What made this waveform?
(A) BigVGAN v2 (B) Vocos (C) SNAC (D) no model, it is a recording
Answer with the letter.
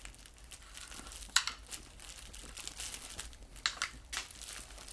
D